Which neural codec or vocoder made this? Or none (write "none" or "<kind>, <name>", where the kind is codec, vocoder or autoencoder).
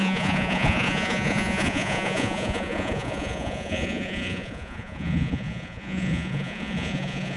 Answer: vocoder, Vocos